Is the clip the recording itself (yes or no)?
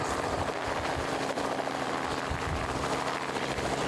no